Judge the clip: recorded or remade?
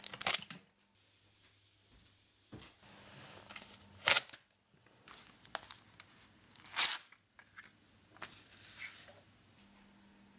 recorded